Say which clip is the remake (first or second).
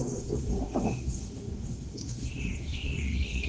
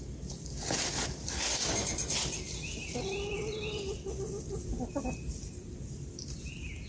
first